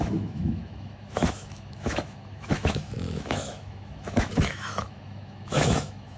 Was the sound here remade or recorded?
remade